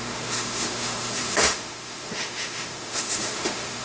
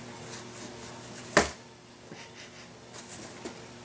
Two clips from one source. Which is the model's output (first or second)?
first